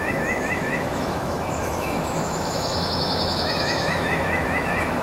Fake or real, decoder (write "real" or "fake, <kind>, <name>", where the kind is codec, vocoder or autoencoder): fake, autoencoder, DAC-VAE